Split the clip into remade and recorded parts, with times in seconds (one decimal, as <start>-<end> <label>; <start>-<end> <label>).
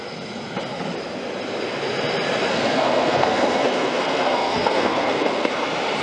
0.0-2.5 recorded; 2.5-5.5 remade; 5.5-6.0 recorded